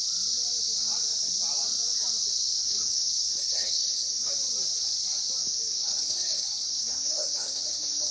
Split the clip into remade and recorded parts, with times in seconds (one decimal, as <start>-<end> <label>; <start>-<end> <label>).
0.0-2.6 recorded; 2.6-4.3 remade; 4.3-5.4 recorded; 5.4-8.1 remade